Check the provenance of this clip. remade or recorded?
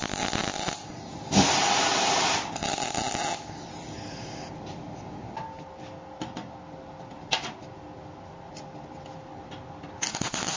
recorded